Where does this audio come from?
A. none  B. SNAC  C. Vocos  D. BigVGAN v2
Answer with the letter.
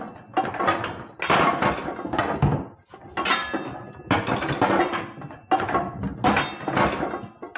A